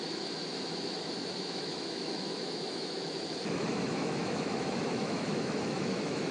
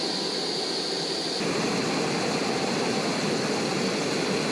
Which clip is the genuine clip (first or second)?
second